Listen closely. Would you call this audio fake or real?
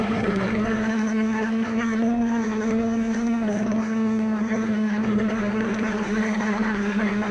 fake